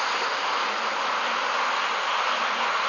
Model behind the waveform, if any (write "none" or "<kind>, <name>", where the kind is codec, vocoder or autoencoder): none